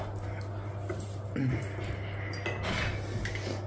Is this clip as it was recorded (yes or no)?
yes